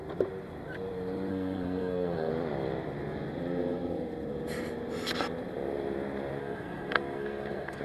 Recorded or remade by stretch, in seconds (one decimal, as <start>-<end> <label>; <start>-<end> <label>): 0.0-1.3 recorded; 1.3-2.3 remade; 2.3-6.4 recorded; 6.4-7.8 remade